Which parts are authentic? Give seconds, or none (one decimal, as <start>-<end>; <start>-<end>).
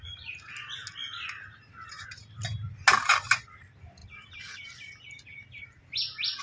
0.0-6.4